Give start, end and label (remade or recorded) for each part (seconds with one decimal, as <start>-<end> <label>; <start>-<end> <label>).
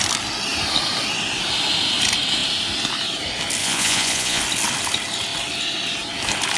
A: 0.0-3.6 recorded; 3.6-4.4 remade; 4.4-6.6 recorded